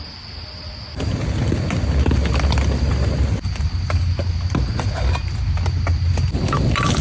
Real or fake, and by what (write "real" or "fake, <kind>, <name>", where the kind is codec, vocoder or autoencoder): real